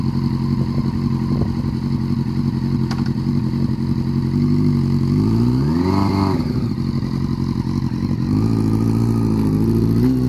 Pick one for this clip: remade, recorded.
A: recorded